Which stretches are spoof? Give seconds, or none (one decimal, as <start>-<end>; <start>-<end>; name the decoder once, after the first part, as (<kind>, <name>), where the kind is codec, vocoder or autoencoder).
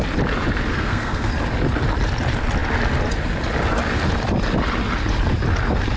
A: 0.7-1.3 (codec, SNAC)